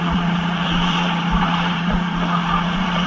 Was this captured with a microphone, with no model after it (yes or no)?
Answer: no